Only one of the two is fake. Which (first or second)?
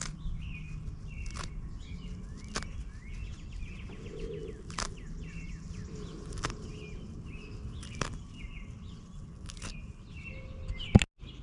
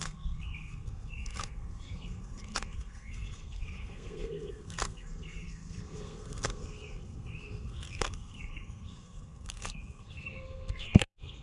second